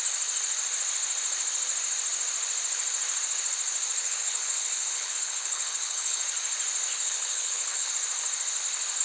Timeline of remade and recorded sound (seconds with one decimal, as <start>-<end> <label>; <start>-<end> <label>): 0.0-4.0 recorded; 4.0-6.2 remade; 6.2-6.9 recorded; 6.9-7.9 remade; 7.9-9.0 recorded